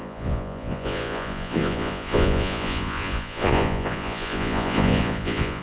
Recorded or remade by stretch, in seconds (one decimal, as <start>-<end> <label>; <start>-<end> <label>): 0.0-5.6 remade